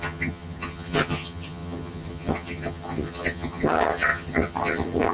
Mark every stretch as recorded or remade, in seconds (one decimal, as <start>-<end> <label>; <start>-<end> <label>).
0.0-5.1 remade